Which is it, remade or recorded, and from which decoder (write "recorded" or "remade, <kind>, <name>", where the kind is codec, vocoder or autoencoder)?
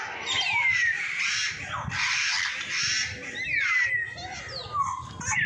recorded